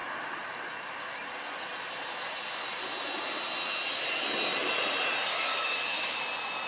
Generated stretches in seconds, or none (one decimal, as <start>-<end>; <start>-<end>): 5.3-6.2

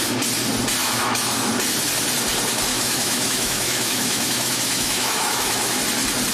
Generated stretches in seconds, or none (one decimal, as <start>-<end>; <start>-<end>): 0.8-1.5; 2.7-5.8

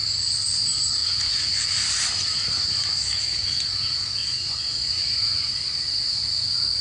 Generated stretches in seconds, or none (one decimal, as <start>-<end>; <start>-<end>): 1.0-1.7; 4.2-5.5

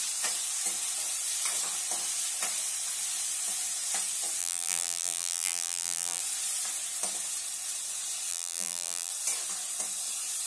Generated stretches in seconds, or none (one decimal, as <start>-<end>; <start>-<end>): 4.4-6.2; 8.3-9.1

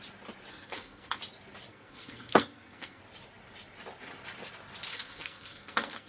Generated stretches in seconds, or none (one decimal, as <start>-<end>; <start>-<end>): 0.5-1.2; 1.7-3.0; 4.9-6.1

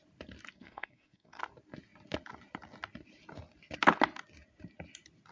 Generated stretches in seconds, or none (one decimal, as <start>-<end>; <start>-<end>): 0.5-1.4